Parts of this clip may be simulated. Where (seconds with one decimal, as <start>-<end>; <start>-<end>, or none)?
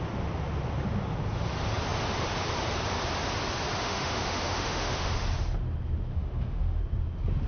3.8-5.1; 6.1-6.8